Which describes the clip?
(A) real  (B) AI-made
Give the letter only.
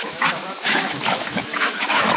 B